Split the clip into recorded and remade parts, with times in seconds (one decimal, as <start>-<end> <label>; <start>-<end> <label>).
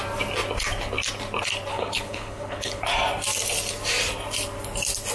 0.0-1.7 recorded; 1.7-2.8 remade; 2.8-5.1 recorded